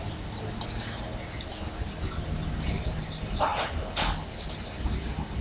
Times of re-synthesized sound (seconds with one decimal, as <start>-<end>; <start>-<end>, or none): none